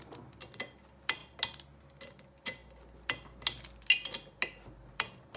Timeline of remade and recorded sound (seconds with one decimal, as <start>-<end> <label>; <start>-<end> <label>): 0.0-5.4 recorded